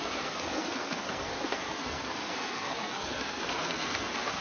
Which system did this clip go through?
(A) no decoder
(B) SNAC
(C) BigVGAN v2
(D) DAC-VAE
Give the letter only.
B